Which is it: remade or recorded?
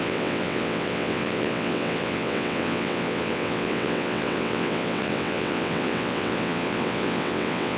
remade